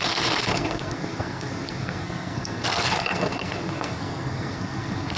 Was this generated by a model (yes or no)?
yes